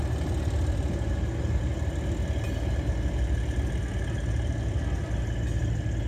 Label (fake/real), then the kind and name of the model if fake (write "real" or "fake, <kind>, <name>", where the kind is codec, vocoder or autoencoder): real